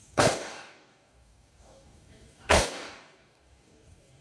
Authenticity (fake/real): fake